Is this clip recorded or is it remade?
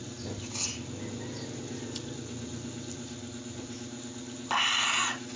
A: recorded